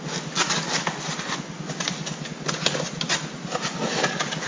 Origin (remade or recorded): recorded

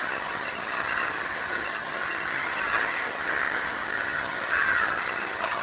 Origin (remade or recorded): remade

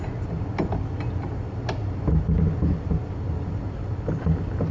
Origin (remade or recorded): recorded